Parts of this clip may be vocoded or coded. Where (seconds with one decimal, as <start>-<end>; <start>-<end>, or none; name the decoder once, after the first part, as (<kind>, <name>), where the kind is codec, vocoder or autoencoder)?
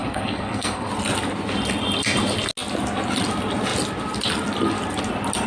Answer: 0.0-0.9 (codec, SNAC)